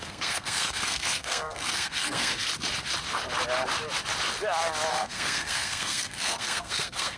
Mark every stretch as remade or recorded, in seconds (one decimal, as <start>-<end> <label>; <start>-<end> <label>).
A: 0.0-2.5 remade; 2.5-4.9 recorded; 4.9-7.2 remade